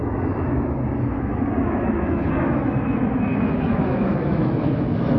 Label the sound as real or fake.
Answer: fake